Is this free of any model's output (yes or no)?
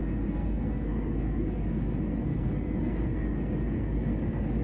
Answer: no